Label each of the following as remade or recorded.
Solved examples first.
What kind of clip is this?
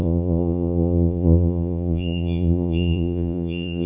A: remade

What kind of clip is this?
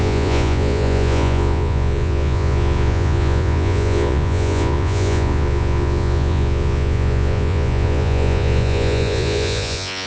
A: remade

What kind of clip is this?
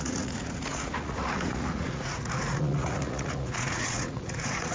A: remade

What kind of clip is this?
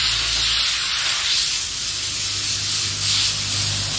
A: recorded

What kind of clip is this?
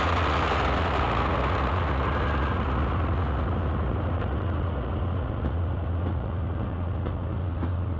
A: remade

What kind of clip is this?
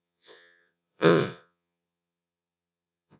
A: remade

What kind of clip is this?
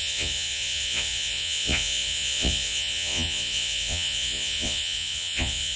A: remade